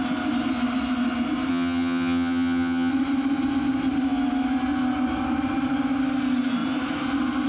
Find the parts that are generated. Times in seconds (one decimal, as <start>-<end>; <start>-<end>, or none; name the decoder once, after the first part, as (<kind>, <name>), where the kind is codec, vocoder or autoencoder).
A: 1.5-2.9 (vocoder, HiFi-GAN)